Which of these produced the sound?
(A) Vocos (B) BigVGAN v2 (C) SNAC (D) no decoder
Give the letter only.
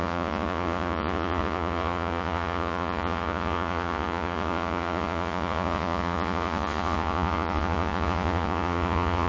A